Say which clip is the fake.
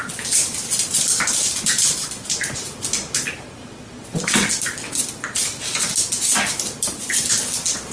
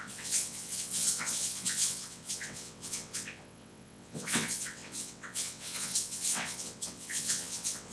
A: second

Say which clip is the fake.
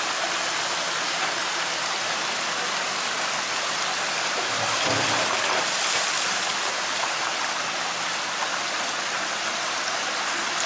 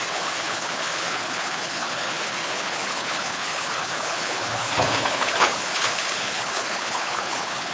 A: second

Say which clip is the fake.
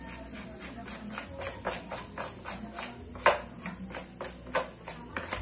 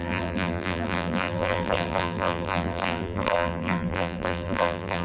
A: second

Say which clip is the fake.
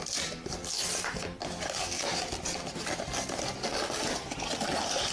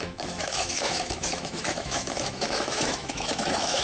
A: second